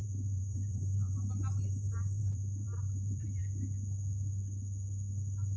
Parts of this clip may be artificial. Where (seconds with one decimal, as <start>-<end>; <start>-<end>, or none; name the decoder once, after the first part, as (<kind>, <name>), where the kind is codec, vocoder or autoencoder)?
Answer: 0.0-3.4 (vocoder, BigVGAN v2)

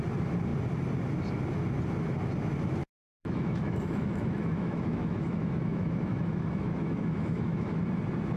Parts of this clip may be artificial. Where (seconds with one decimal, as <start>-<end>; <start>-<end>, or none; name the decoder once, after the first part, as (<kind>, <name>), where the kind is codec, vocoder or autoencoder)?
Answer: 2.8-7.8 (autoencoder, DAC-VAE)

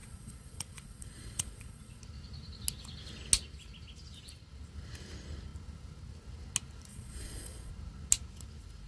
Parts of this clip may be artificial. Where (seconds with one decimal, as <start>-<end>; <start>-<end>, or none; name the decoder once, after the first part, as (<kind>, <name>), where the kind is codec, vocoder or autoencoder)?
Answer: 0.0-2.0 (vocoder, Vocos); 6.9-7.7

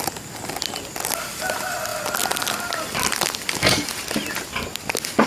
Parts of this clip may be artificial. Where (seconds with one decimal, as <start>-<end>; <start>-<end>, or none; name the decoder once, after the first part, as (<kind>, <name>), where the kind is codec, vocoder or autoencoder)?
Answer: none

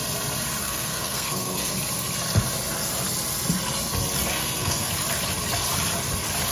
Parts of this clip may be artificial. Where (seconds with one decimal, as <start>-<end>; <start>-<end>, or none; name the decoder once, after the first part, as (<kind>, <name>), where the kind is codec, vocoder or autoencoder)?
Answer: 0.6-1.7 (codec, SNAC); 4.4-4.9